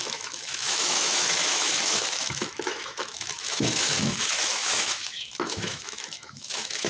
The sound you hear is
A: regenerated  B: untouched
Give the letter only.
A